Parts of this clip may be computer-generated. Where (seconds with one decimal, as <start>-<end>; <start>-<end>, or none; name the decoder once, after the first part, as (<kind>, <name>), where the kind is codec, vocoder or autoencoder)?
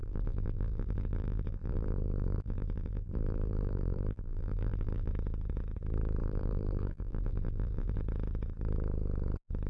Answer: 0.0-5.1 (vocoder, BigVGAN v2); 6.2-8.0